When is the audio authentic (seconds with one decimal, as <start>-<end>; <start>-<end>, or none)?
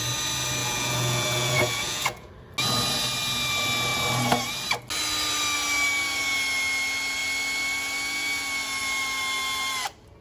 0.0-0.6; 2.3-10.2